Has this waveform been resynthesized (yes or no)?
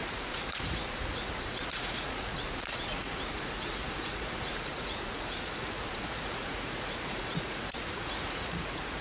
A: yes